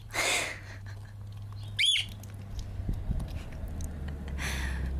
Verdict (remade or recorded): recorded